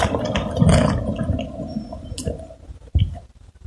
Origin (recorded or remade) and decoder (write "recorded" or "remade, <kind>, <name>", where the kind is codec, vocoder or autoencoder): recorded